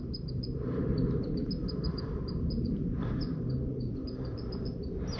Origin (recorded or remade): remade